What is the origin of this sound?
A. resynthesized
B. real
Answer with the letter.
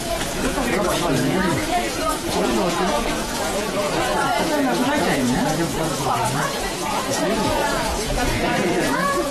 A